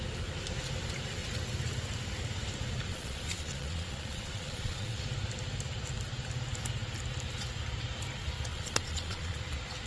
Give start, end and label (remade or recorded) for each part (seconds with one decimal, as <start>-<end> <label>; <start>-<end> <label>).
0.0-2.9 recorded; 2.9-5.0 remade; 5.0-8.5 recorded; 8.5-9.4 remade; 9.4-9.9 recorded